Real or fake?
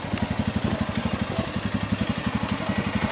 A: real